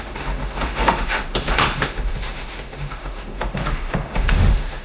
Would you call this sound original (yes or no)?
no